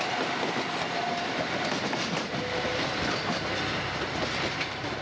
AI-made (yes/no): no